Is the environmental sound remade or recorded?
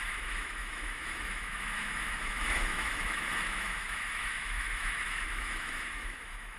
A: remade